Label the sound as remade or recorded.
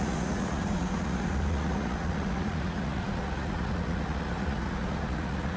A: remade